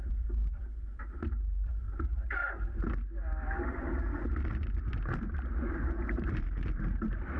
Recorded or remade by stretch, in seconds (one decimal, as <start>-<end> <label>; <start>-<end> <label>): 0.0-2.4 remade; 2.4-5.7 recorded; 5.7-7.4 remade